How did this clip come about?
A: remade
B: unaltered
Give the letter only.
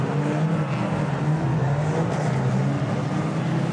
B